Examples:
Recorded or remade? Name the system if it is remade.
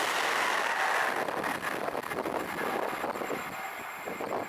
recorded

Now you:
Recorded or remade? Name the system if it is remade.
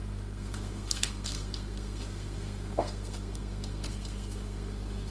remade, codec, SNAC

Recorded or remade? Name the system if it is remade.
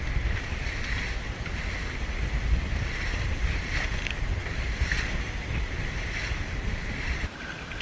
recorded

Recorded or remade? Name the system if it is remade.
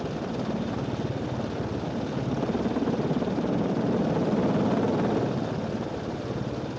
recorded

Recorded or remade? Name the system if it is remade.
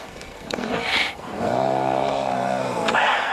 remade, codec, SNAC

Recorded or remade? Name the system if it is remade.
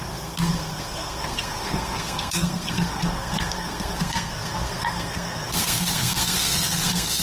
remade, codec, SNAC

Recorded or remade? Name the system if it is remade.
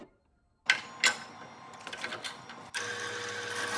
recorded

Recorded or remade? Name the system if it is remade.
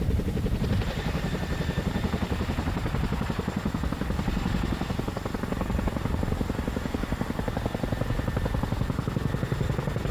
recorded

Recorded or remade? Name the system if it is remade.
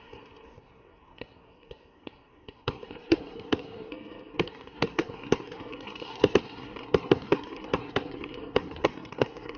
remade, codec, SNAC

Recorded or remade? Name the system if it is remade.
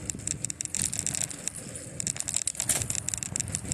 recorded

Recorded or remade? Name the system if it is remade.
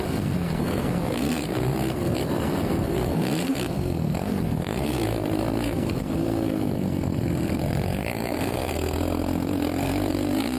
remade, codec, SNAC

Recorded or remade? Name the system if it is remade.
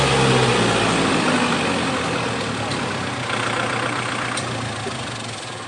recorded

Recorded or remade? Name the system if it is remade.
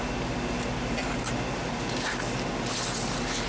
recorded